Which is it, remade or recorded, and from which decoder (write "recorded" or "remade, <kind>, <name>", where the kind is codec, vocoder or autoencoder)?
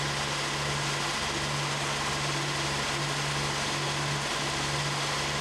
recorded